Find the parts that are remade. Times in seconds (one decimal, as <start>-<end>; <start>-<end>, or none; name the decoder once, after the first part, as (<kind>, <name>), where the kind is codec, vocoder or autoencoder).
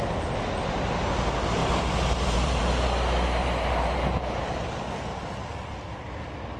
1.6-2.6 (vocoder, BigVGAN v2); 3.4-4.4